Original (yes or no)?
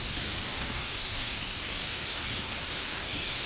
no